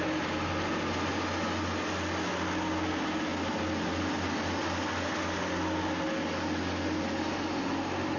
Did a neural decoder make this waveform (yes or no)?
no